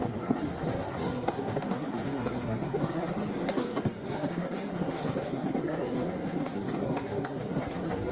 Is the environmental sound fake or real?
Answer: fake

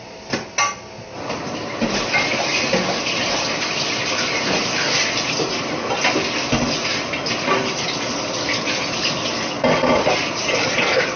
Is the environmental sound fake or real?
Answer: real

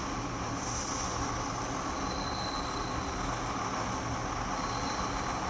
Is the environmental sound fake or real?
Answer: real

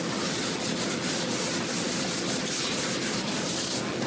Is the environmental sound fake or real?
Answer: real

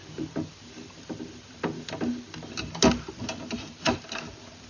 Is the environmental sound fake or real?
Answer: real